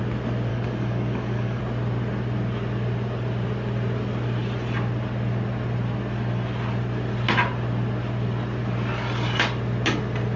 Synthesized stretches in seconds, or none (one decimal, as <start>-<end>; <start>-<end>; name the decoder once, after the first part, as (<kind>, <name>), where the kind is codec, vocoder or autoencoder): 0.5-1.6 (codec, DAC)